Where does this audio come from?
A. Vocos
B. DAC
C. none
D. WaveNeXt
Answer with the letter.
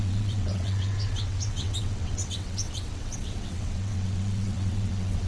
D